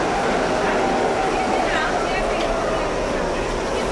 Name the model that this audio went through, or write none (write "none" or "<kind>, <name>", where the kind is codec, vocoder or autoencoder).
none